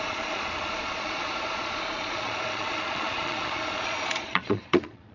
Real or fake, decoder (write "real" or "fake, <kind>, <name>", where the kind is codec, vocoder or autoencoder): fake, vocoder, Vocos